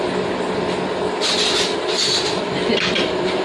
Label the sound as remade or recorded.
recorded